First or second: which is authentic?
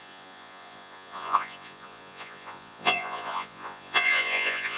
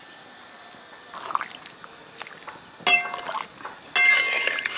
second